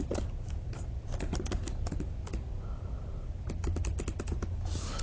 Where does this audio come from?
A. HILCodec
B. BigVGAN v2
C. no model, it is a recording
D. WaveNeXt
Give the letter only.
C